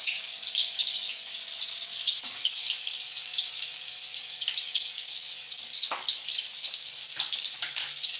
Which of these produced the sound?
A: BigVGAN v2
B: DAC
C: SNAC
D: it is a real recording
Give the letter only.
B